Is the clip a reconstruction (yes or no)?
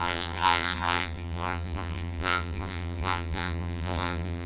yes